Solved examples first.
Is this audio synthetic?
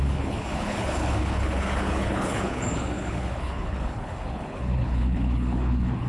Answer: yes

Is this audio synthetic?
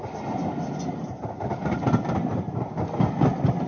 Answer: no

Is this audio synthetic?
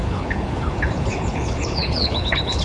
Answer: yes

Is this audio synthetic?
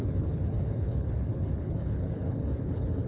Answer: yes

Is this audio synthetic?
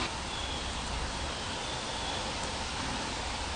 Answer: no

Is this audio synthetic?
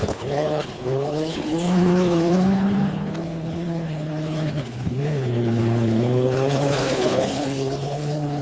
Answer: yes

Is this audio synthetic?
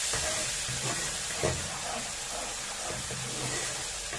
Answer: no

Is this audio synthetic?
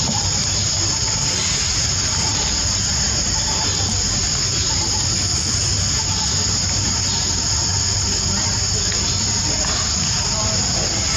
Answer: no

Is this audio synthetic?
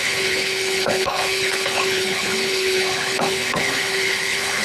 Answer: yes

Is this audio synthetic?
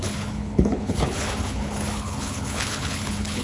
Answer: yes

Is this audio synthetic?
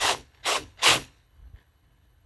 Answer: yes